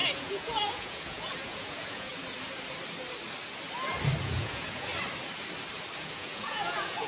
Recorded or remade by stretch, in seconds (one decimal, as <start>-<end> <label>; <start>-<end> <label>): 0.0-2.1 remade; 2.1-4.2 recorded; 4.2-4.9 remade; 4.9-6.0 recorded; 6.0-7.1 remade